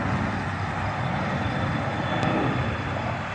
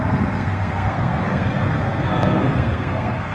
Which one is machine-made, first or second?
second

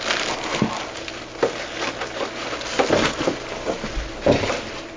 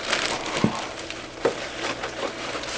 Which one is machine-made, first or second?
second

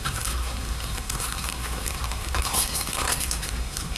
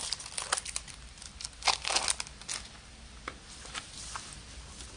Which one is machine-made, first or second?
first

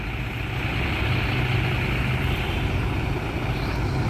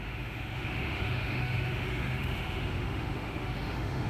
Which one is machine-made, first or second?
second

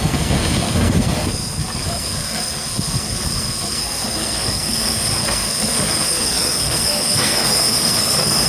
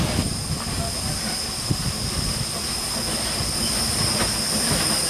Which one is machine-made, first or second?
first